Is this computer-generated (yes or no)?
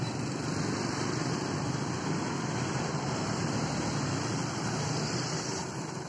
yes